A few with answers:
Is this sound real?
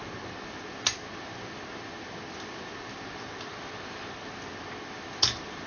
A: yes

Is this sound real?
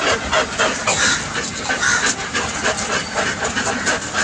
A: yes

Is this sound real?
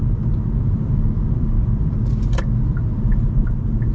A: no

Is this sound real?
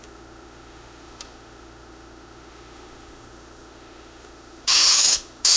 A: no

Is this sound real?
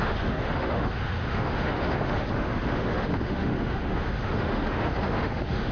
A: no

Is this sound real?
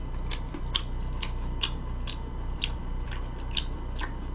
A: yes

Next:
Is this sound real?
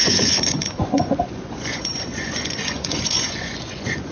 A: no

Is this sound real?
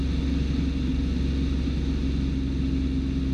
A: yes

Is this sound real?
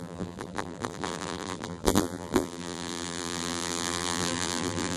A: no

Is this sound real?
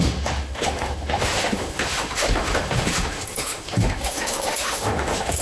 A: no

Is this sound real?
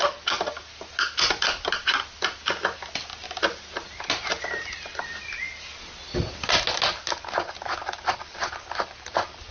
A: yes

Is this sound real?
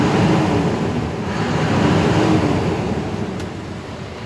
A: yes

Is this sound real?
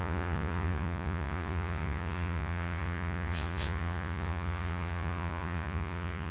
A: no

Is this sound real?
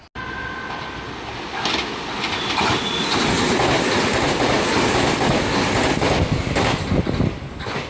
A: yes